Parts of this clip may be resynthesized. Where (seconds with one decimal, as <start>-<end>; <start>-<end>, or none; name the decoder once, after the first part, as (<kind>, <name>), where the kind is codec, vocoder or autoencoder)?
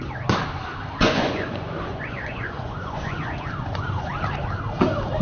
1.0-4.1 (vocoder, Vocos)